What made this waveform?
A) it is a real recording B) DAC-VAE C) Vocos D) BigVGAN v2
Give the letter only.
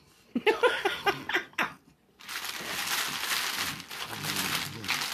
A